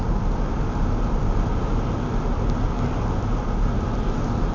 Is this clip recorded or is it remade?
recorded